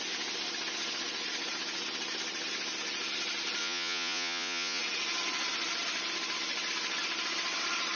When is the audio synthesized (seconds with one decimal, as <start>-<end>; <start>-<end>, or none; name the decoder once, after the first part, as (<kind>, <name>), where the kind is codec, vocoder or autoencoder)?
3.6-4.8 (vocoder, Vocos)